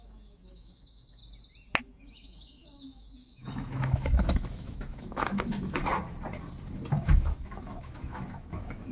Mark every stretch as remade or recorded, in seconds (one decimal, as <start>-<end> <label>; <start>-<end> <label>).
0.0-1.2 remade; 1.2-1.8 recorded; 1.8-5.8 remade; 5.8-6.9 recorded; 6.9-8.9 remade